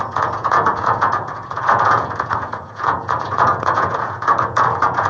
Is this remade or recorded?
remade